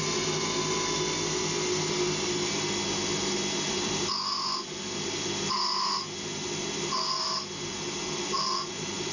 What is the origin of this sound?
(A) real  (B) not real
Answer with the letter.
A